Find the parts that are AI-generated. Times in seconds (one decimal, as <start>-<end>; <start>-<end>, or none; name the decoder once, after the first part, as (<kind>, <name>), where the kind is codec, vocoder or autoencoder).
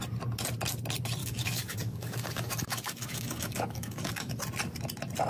1.2-4.4 (codec, DAC)